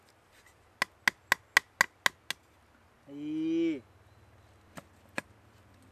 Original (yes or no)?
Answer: yes